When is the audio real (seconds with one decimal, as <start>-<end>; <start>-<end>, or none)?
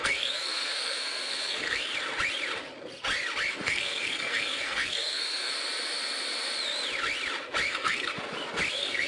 1.9-3.5; 5.5-7.7; 8.1-8.7